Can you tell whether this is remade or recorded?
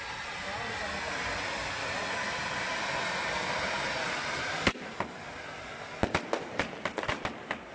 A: recorded